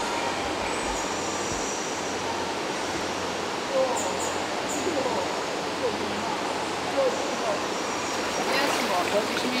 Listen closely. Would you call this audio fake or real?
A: real